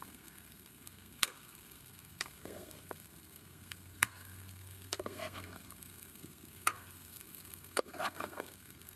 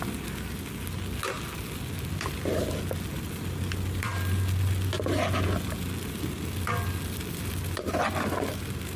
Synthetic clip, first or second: first